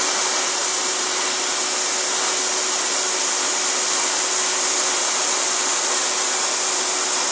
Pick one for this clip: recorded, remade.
recorded